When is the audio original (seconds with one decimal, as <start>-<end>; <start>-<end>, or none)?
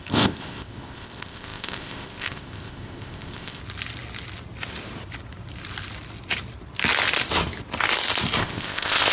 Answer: 3.6-8.4